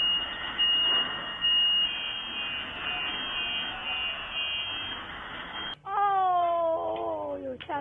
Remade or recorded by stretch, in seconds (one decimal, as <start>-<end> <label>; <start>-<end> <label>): 0.0-7.8 recorded

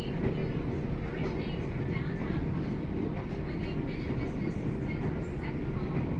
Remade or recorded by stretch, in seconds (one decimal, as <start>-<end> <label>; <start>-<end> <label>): 0.0-0.4 recorded; 0.4-4.1 remade; 4.1-6.2 recorded

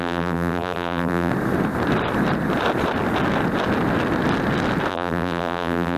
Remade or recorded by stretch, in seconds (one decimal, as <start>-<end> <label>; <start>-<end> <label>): 0.0-1.3 remade; 1.3-4.9 recorded; 4.9-6.0 remade